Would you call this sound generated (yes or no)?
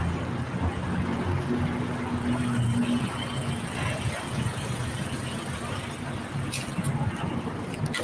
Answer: no